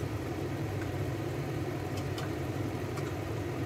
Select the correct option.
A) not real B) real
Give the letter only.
A